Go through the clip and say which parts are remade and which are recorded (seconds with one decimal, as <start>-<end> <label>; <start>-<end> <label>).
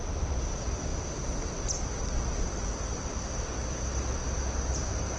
0.0-5.2 recorded